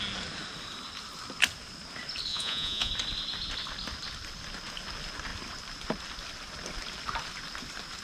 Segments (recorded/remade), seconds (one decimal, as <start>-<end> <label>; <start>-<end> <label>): 0.0-2.3 recorded; 2.3-2.9 remade; 2.9-8.0 recorded